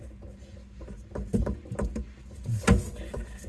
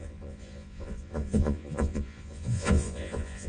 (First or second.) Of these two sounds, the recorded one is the first